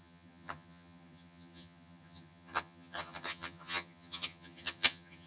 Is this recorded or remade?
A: remade